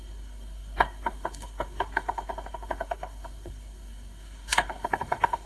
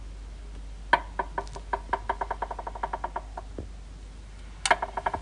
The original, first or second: second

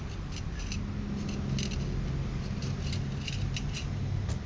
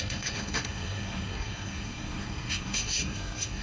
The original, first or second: first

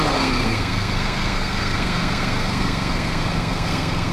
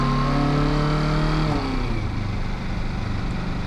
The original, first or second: second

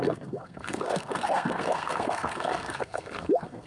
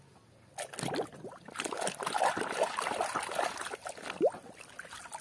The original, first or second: second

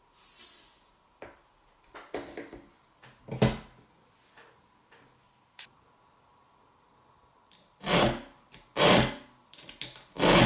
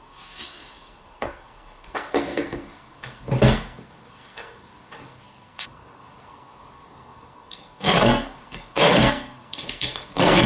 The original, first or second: first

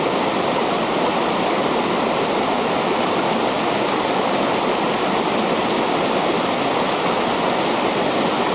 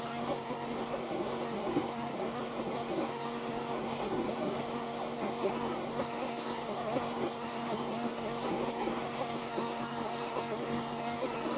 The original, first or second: first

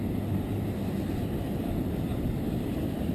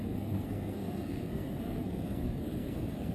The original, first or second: first